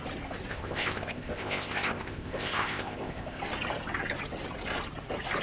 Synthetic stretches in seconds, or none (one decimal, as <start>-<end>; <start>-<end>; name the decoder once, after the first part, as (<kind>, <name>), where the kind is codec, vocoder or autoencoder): 0.5-3.4 (codec, ZipCodec)